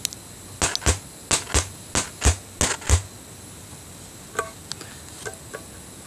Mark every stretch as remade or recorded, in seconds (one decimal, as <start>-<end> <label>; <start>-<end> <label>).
0.0-6.1 recorded